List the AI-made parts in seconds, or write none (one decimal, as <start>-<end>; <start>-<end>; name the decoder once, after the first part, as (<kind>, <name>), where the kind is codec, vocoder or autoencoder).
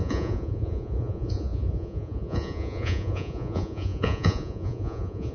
0.0-5.3 (vocoder, Vocos)